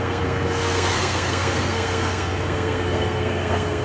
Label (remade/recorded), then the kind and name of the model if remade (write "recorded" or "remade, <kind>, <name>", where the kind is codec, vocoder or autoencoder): remade, codec, SNAC